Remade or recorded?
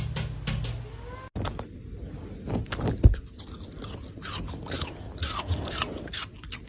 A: recorded